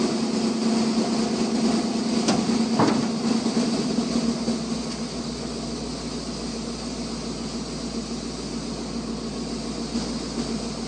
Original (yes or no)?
yes